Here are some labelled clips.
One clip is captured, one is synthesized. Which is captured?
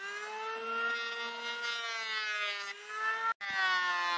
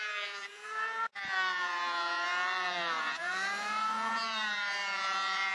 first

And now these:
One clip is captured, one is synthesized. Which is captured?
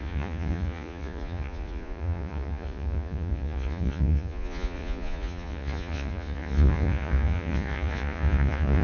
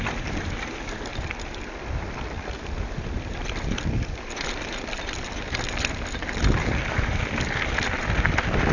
second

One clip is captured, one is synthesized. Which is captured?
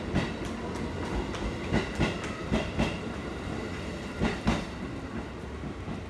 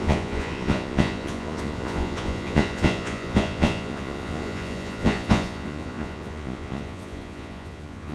first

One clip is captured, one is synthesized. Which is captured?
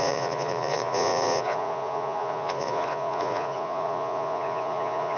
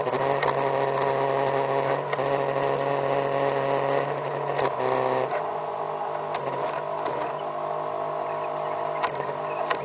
second